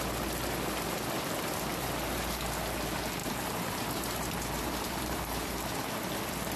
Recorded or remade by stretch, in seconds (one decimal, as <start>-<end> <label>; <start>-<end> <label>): 0.0-3.2 recorded; 3.2-5.7 remade; 5.7-6.6 recorded